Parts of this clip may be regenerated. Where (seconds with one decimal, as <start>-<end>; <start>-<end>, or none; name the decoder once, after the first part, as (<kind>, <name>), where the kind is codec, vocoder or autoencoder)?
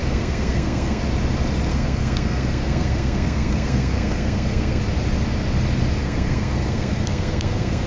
0.0-1.0 (codec, SNAC); 1.7-4.8; 6.0-7.9